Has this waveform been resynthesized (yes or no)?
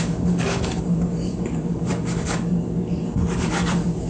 yes